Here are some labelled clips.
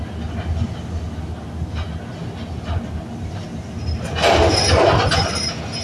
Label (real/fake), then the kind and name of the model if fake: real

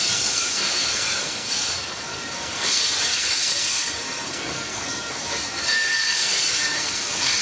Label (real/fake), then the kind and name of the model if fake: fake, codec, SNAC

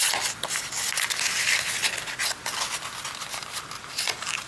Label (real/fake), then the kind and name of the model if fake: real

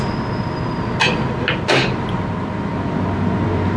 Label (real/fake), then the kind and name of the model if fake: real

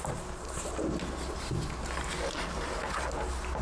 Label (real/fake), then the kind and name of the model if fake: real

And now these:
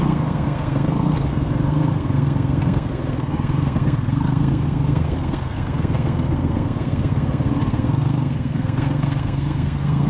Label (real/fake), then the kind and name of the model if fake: fake, codec, SNAC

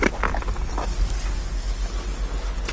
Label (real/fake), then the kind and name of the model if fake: real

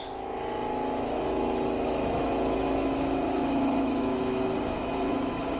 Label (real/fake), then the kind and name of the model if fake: fake, autoencoder, DAC-VAE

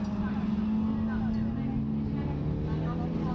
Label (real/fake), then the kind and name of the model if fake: real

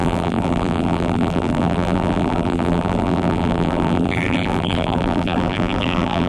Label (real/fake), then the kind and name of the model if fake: fake, vocoder, BigVGAN v2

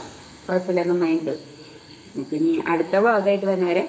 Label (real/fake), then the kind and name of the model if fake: fake, codec, SNAC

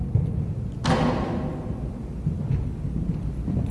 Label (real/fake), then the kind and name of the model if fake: real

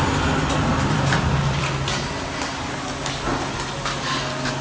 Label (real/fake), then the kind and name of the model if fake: real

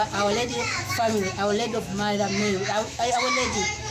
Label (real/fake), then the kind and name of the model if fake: fake, autoencoder, DAC-VAE